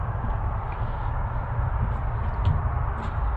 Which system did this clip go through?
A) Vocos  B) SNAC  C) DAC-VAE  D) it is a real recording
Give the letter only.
D